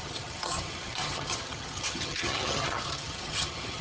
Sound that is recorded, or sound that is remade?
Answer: remade